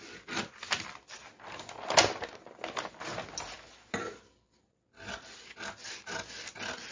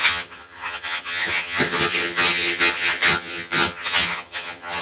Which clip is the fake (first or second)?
second